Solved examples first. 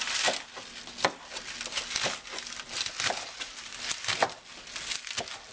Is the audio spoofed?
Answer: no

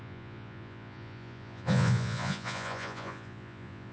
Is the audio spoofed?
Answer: yes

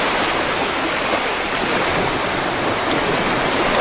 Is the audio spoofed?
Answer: no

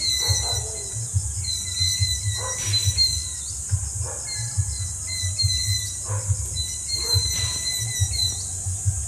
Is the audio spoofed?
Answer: no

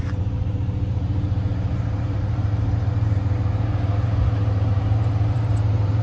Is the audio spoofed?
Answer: yes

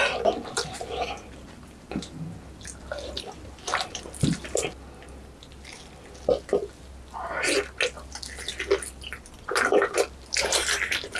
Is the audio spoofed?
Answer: no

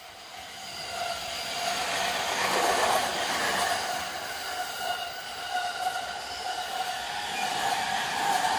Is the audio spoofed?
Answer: no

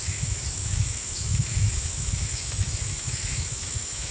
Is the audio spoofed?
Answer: yes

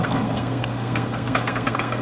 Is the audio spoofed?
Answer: yes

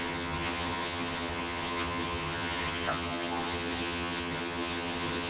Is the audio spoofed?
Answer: yes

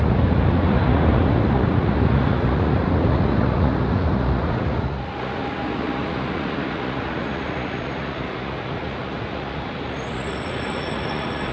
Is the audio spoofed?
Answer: yes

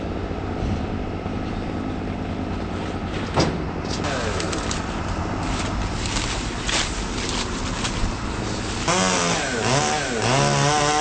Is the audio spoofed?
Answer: no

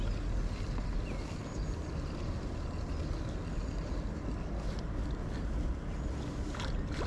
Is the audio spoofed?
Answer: no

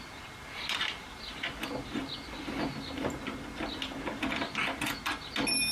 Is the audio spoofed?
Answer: no